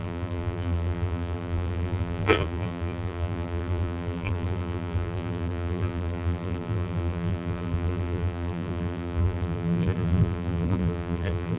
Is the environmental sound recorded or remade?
remade